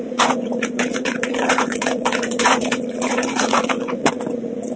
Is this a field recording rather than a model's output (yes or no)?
no